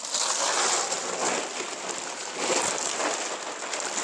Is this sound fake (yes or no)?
no